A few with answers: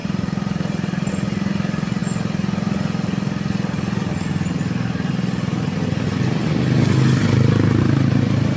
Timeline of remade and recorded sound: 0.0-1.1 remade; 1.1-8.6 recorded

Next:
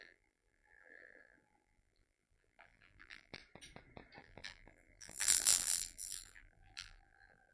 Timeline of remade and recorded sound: 0.0-3.4 remade; 3.4-4.2 recorded; 4.2-7.5 remade

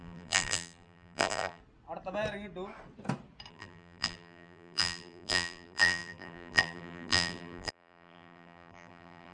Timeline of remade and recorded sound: 0.0-1.6 remade; 1.6-3.5 recorded; 3.5-9.3 remade